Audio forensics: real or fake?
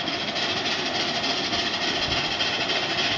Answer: real